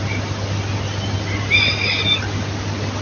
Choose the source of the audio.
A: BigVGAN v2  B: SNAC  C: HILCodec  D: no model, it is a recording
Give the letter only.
D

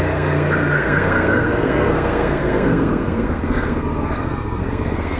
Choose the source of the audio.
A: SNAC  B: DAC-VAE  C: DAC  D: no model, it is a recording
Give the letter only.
A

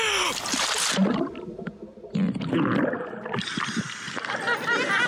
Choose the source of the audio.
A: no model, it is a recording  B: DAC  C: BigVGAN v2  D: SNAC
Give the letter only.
A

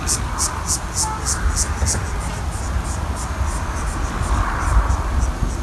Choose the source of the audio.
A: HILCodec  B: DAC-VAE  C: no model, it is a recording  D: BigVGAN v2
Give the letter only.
C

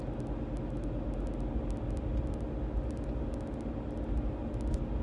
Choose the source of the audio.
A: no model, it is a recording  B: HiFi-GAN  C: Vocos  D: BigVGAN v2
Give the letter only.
A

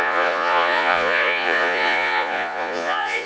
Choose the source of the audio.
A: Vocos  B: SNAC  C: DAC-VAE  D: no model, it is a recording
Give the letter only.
A